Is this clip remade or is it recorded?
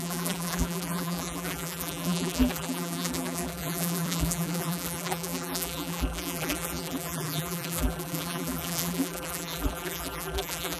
remade